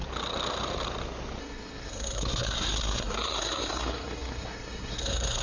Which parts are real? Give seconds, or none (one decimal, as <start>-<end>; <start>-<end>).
0.0-1.4